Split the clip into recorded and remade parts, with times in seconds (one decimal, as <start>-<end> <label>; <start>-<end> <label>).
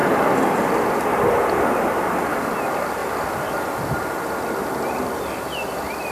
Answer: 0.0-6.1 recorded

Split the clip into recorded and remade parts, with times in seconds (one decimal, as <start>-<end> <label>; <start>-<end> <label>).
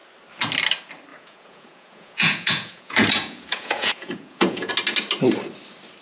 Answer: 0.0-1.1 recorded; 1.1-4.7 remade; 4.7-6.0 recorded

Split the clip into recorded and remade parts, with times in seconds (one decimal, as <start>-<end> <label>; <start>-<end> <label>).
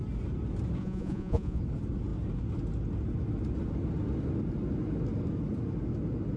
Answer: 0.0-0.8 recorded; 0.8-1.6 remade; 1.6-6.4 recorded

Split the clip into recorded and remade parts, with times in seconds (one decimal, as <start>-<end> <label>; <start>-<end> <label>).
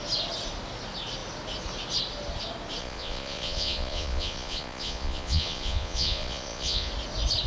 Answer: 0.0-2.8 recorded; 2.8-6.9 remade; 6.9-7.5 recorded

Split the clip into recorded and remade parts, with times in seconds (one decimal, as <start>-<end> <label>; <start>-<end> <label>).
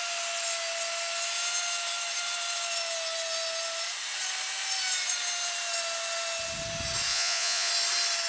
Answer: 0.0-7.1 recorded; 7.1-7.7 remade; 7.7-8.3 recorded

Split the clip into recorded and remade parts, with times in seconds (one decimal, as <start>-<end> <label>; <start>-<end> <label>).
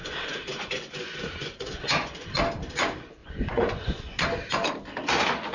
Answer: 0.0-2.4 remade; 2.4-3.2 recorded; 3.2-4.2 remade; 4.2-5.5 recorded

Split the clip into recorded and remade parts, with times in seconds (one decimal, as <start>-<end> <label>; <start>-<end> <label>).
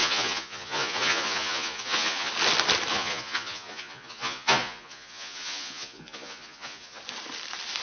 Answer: 0.0-2.3 remade; 2.3-2.9 recorded; 2.9-7.0 remade; 7.0-7.8 recorded